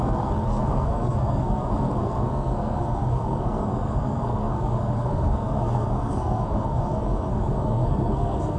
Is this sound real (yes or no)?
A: no